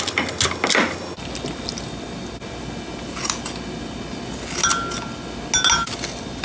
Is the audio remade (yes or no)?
no